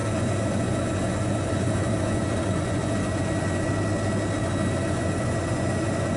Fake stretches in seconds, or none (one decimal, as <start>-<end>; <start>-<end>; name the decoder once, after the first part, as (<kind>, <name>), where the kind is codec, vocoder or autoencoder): 0.0-3.7 (vocoder, Vocos); 4.4-6.2